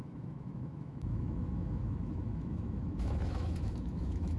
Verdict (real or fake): fake